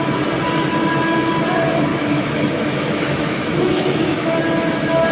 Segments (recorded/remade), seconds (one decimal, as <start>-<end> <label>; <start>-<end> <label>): 0.0-1.9 recorded; 1.9-4.4 remade; 4.4-5.1 recorded